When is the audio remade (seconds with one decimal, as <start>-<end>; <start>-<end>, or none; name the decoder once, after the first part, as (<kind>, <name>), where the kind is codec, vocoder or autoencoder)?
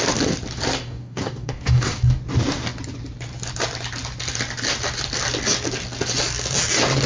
0.8-2.2 (codec, DAC)